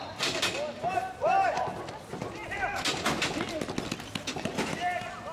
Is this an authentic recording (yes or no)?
yes